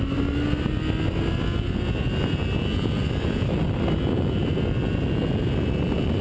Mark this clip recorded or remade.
recorded